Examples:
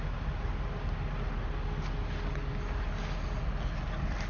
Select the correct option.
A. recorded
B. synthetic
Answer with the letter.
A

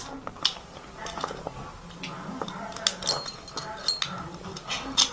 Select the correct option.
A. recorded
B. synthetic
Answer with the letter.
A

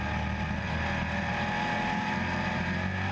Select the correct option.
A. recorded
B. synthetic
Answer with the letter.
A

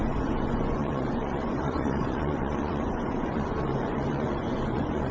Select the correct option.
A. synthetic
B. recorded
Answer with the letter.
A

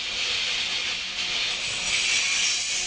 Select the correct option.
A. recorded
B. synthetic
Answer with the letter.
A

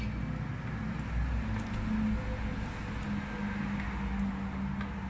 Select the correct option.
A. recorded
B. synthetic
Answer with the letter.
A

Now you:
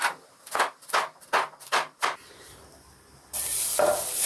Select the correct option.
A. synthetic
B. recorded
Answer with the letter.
A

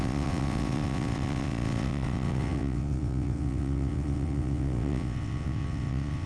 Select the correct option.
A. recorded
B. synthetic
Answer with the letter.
B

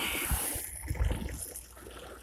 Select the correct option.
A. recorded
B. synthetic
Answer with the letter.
A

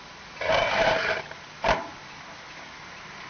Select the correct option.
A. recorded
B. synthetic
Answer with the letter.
A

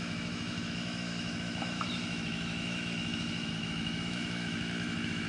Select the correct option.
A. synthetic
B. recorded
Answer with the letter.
A